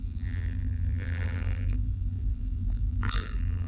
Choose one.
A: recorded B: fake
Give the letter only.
B